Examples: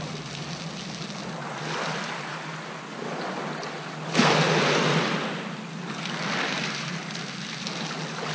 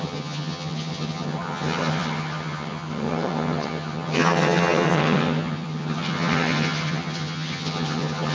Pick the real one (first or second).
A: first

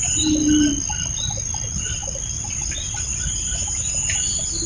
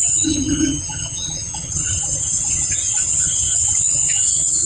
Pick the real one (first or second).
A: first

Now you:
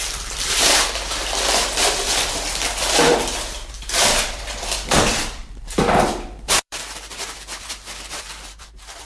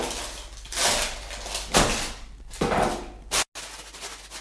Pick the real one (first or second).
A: second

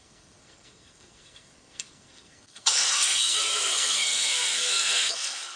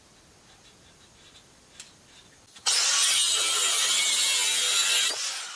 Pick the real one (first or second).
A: second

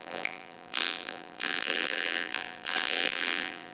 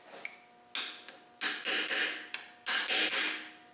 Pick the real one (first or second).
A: second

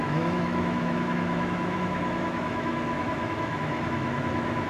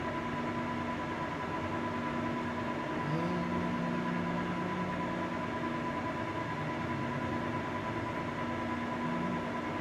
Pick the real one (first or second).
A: second